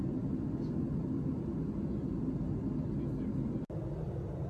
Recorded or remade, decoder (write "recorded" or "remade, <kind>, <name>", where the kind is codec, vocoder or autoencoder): recorded